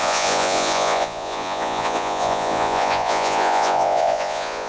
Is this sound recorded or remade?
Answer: remade